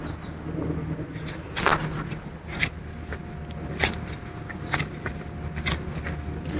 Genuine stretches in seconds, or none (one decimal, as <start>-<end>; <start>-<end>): 0.0-6.6